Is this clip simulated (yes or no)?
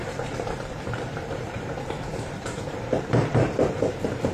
yes